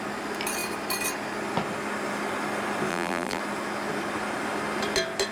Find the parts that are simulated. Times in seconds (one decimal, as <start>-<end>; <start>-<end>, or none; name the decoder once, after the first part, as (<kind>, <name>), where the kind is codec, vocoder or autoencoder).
2.9-3.4 (vocoder, BigVGAN v2)